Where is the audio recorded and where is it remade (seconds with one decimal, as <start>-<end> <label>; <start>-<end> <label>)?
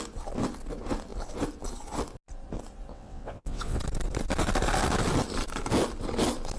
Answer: 0.0-2.9 recorded; 2.9-3.8 remade; 3.8-6.6 recorded